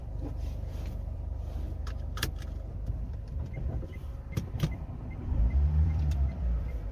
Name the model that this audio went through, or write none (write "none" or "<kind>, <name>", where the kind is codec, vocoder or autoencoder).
vocoder, BigVGAN v2